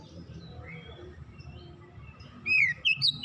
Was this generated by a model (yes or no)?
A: yes